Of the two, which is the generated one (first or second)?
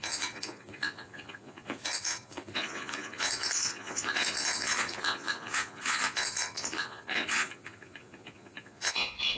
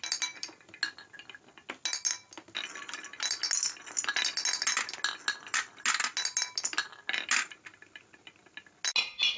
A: first